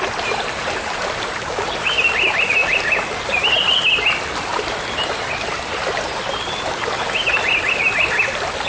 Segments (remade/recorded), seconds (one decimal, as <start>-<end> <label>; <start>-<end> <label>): 0.0-8.7 recorded